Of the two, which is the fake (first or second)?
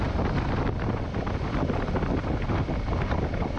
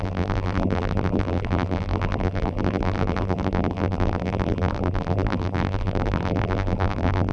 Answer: second